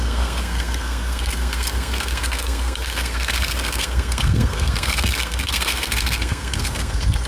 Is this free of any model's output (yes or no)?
no